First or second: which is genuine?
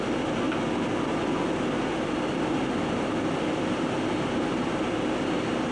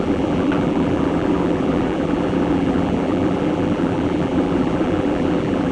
first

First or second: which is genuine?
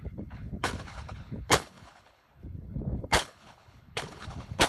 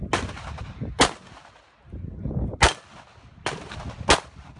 second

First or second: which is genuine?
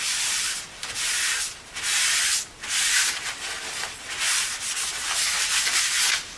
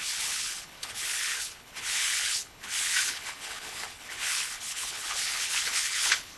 first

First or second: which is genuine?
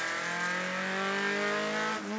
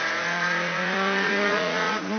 first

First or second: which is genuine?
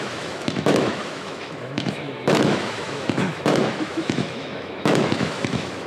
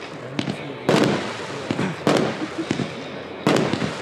second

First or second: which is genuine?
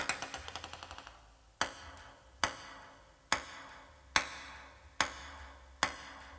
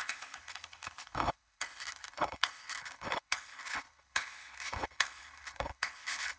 first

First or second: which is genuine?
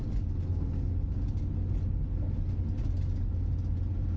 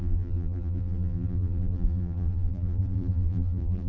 first